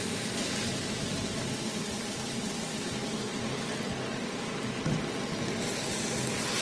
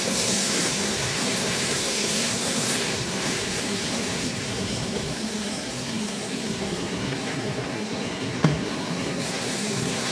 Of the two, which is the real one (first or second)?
first